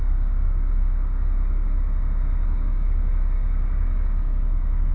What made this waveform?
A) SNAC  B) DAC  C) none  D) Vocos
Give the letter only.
B